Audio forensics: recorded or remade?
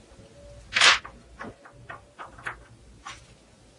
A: recorded